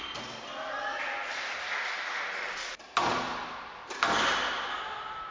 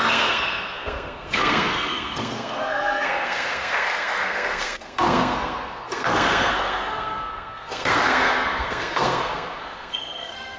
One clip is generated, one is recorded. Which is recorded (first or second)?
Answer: first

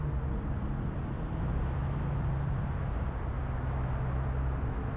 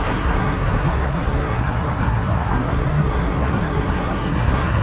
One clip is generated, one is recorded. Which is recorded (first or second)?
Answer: first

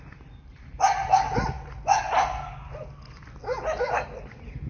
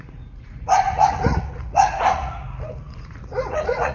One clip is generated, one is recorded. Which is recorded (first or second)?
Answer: first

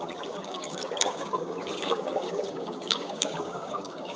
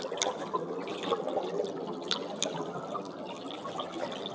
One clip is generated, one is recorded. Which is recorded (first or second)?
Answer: second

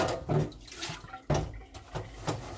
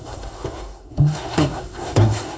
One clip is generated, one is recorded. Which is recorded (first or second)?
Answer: first